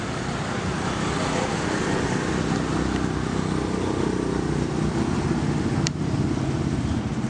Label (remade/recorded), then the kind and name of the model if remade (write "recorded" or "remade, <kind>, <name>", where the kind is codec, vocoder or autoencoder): recorded